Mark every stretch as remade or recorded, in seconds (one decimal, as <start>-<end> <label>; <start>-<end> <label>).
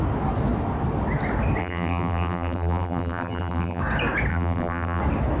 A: 0.0-1.6 recorded; 1.6-3.8 remade; 3.8-4.3 recorded; 4.3-5.0 remade; 5.0-5.4 recorded